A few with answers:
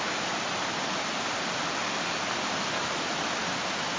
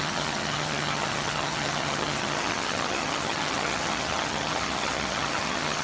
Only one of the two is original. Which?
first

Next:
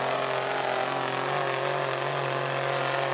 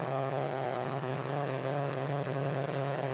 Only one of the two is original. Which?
first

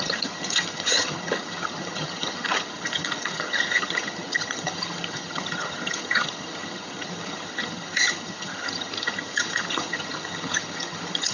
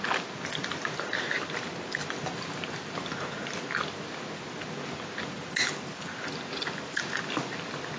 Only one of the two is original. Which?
second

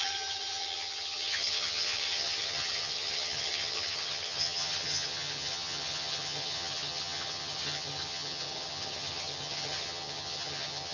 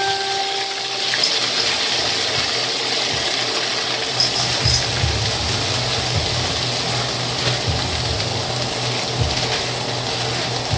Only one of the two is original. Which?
second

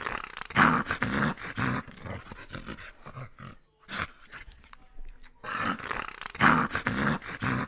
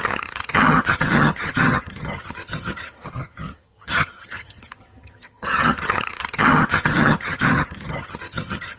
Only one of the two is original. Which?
first